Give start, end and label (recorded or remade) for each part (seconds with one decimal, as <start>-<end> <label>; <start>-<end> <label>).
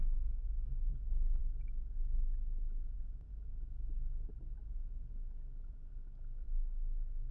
0.0-0.9 remade; 0.9-7.3 recorded